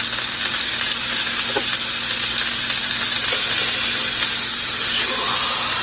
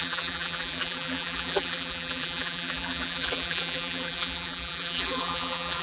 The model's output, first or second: second